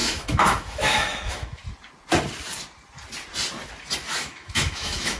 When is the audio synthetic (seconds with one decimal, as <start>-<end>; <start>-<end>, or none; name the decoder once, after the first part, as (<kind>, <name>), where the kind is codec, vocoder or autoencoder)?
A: 0.0-1.6 (autoencoder, DAC-VAE); 4.1-5.2